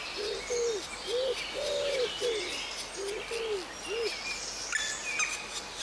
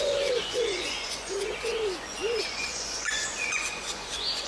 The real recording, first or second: first